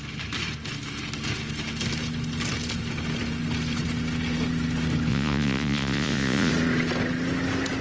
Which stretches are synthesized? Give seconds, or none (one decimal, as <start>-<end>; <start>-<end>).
5.1-6.5